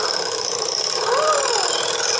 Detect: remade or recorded recorded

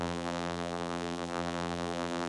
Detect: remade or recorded remade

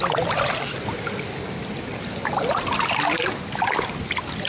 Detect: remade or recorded recorded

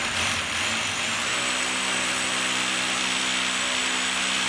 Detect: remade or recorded recorded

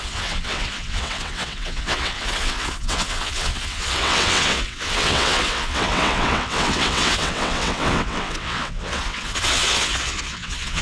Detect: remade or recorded remade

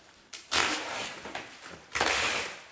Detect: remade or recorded remade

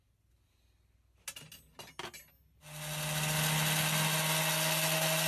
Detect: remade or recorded recorded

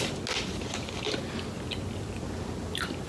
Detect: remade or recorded recorded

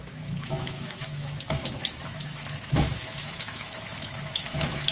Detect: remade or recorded remade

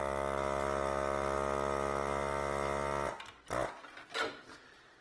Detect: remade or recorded recorded